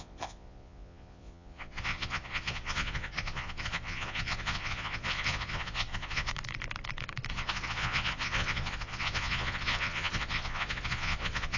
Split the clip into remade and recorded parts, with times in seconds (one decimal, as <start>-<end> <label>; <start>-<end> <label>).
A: 0.0-6.3 remade; 6.3-7.3 recorded; 7.3-11.6 remade